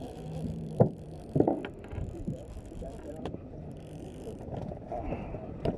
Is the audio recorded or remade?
remade